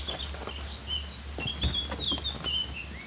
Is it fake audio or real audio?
real